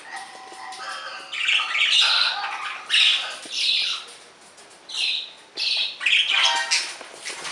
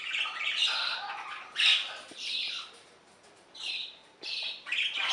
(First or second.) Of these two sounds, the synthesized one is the second